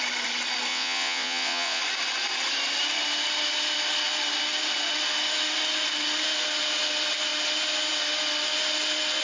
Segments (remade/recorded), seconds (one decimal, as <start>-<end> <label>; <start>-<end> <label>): 0.0-0.7 recorded; 0.7-1.8 remade; 1.8-9.2 recorded